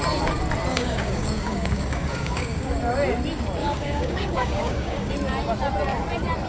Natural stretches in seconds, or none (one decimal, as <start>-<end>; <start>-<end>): 0.0-0.7; 2.7-3.6; 5.1-6.5